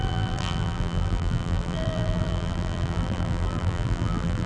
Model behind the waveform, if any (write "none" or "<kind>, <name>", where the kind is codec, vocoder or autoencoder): vocoder, BigVGAN v2